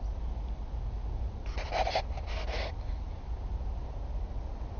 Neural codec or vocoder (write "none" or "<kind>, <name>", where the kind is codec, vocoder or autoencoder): none